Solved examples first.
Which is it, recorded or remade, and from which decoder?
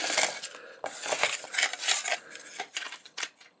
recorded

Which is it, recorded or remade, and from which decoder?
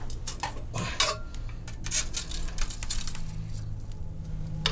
recorded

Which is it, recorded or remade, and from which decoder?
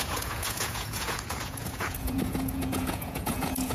remade, vocoder, Vocos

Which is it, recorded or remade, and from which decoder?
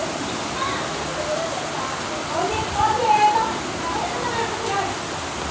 recorded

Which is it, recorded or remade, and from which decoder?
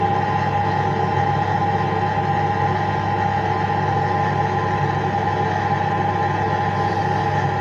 recorded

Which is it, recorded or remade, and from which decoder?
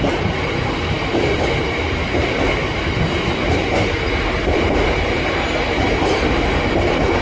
remade, vocoder, BigVGAN v2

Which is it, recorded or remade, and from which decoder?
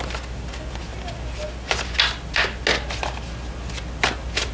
recorded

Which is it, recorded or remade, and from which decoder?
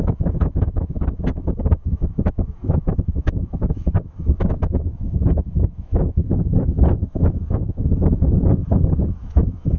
remade, autoencoder, DAC-VAE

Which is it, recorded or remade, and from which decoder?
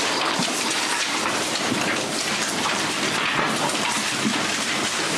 remade, vocoder, BigVGAN v2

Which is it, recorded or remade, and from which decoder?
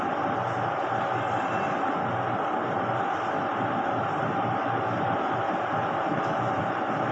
recorded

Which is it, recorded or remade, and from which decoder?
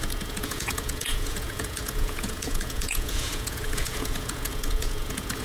remade, vocoder, Vocos